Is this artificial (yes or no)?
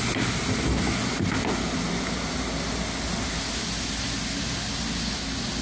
no